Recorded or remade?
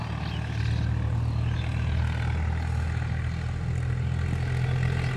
recorded